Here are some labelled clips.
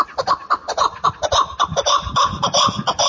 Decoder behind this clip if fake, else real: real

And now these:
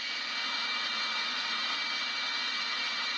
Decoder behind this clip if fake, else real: real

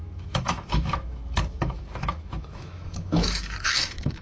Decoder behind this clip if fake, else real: fake, autoencoder, DAC-VAE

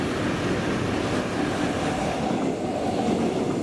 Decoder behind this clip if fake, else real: real